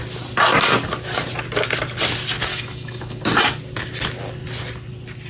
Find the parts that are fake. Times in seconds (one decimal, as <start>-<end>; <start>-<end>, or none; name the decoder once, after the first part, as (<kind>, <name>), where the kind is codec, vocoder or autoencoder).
2.5-3.2 (autoencoder, DAC-VAE)